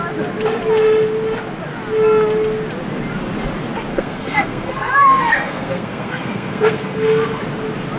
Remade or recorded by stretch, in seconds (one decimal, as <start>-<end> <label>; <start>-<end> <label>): 0.0-3.9 recorded; 3.9-7.4 remade; 7.4-8.0 recorded